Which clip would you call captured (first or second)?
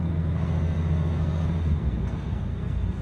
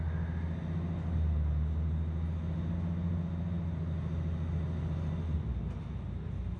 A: second